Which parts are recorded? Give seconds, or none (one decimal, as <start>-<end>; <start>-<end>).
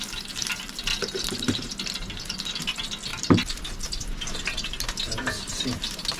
0.0-3.1